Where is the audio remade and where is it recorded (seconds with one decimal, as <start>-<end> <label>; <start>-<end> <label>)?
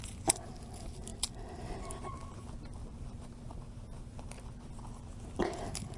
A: 0.0-2.8 recorded; 2.8-4.5 remade; 4.5-6.0 recorded